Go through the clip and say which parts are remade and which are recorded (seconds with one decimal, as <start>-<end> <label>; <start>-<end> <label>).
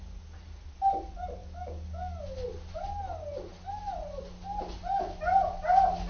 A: 0.0-1.4 recorded; 1.4-2.2 remade; 2.2-6.1 recorded